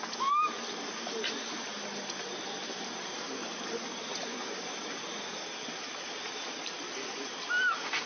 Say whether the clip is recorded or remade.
recorded